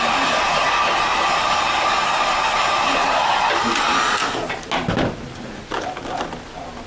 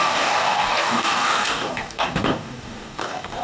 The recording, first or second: first